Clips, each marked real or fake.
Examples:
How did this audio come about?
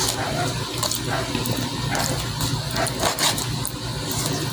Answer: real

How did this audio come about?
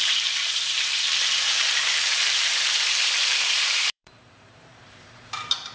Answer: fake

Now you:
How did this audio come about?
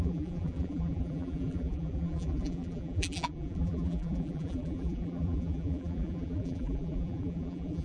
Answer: fake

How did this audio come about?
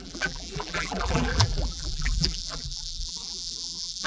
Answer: fake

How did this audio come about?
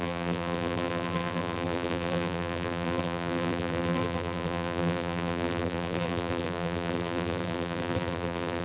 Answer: fake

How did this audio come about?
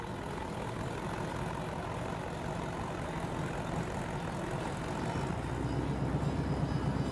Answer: real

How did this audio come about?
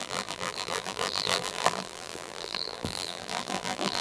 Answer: fake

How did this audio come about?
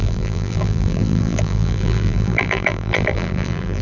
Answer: fake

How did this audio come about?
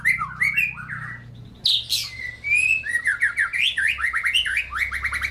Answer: real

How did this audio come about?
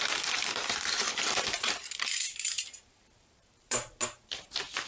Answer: fake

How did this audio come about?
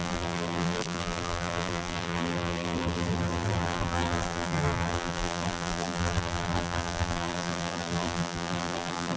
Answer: fake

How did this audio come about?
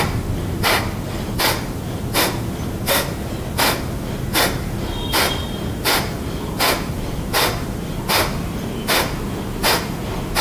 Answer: real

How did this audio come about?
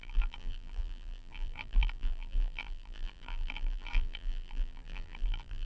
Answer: fake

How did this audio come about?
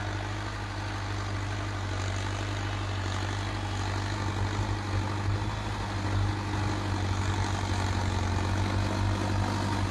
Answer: real